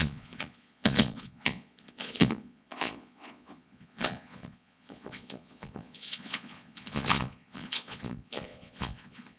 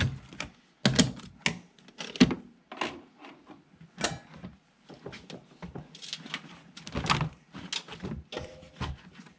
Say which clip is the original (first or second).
second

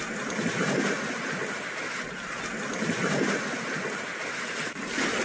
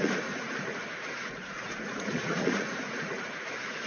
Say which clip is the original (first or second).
first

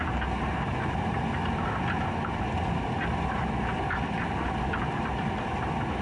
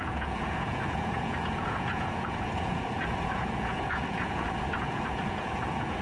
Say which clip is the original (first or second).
first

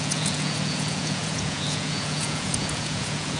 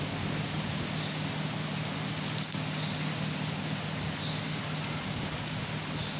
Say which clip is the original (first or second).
second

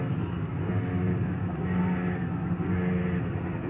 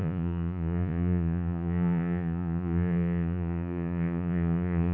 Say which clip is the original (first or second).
first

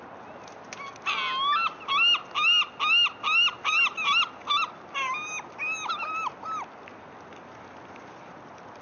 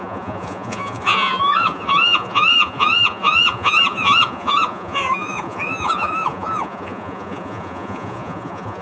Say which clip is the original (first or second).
first